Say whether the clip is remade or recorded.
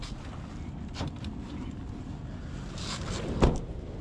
recorded